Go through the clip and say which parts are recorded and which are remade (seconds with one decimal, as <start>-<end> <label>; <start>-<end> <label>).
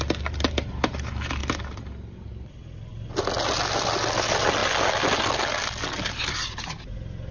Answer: 0.0-7.3 recorded